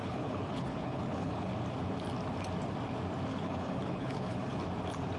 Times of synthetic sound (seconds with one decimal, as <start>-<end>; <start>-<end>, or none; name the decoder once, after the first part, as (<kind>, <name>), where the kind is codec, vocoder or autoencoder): 0.0-1.5 (codec, HILCodec); 3.3-4.6